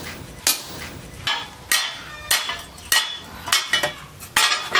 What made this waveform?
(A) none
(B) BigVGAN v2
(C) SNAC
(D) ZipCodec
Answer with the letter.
A